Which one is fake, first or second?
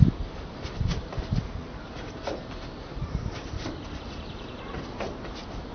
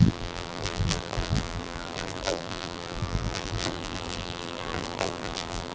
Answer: second